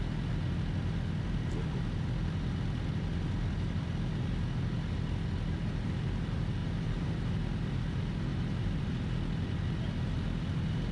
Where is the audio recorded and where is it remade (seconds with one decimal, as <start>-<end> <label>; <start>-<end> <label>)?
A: 0.0-6.6 recorded; 6.6-7.2 remade; 7.2-8.3 recorded; 8.3-8.9 remade; 8.9-10.9 recorded

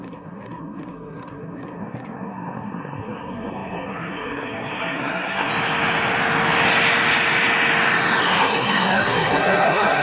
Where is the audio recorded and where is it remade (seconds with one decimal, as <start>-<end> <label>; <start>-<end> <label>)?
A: 0.0-5.5 remade; 5.5-8.2 recorded; 8.2-10.0 remade